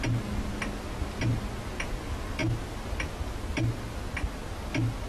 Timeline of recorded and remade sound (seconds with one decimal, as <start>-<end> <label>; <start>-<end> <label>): 0.0-5.1 recorded